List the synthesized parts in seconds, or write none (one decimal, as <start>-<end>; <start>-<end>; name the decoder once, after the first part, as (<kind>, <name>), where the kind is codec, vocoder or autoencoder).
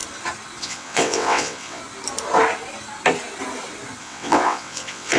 0.6-1.8 (vocoder, WaveNeXt); 4.0-5.2